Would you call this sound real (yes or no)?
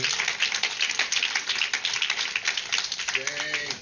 yes